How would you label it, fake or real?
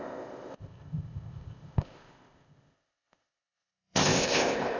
fake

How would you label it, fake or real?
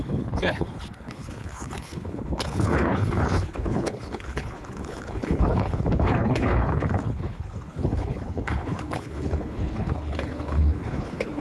fake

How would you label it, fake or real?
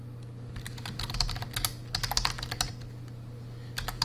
real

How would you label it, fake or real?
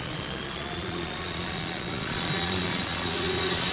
fake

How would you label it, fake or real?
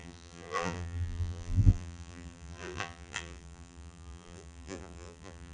fake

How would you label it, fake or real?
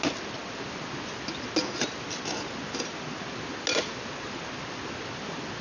real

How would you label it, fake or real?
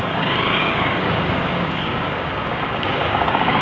fake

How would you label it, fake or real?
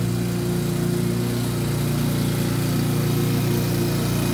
real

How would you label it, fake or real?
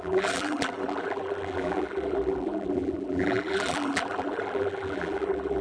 fake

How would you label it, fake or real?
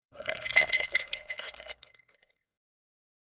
fake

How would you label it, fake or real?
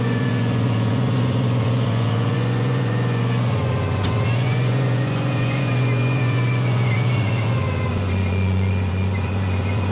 fake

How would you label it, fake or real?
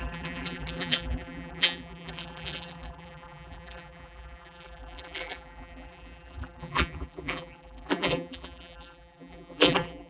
fake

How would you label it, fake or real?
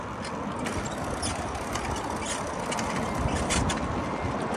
real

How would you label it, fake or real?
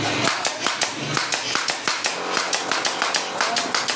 real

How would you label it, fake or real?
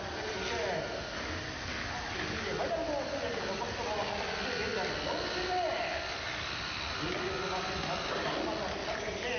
real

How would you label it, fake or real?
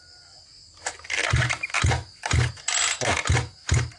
real